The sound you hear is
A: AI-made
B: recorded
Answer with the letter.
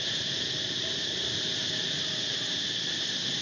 B